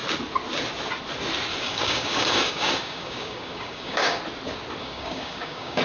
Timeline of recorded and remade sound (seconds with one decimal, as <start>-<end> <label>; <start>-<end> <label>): 0.0-1.5 recorded; 1.5-4.2 remade; 4.2-4.8 recorded; 4.8-5.8 remade